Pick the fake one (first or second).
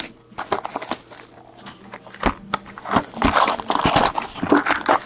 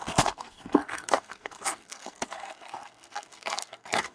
second